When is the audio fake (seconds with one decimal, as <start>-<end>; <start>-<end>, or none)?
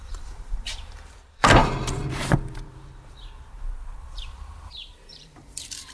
0.0-5.9